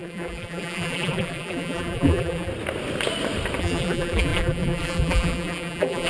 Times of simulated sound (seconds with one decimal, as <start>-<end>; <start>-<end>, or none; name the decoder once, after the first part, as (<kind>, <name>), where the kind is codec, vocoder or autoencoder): 0.0-2.5 (vocoder, BigVGAN v2); 3.6-6.1